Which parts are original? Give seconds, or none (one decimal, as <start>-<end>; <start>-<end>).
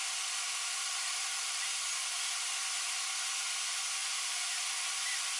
0.0-4.0; 4.6-5.4